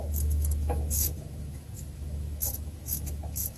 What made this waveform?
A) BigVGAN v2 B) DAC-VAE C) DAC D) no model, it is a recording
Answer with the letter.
B